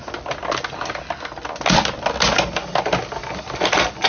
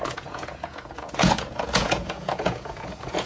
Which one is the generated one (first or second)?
second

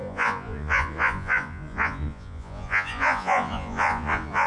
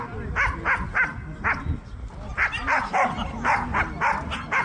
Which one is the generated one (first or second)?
first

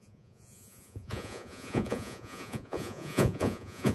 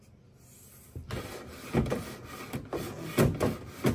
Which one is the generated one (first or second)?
first